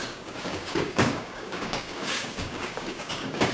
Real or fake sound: fake